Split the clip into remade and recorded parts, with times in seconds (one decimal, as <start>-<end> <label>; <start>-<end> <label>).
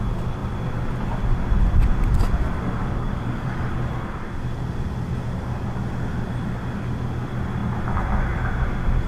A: 0.0-2.8 recorded; 2.8-3.7 remade; 3.7-9.1 recorded